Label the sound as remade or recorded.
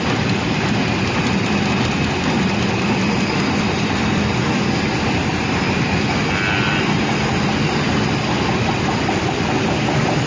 recorded